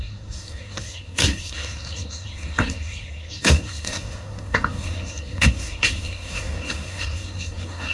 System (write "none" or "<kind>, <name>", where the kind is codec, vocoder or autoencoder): codec, SNAC